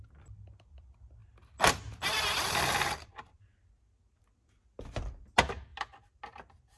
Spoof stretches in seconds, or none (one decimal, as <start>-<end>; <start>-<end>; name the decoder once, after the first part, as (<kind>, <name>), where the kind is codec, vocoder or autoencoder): none